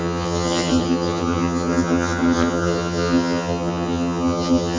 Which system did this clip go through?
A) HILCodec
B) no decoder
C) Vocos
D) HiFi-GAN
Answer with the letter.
D